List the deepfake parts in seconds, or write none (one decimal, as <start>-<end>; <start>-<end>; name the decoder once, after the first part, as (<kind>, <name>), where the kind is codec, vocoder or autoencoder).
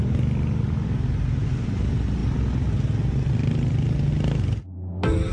none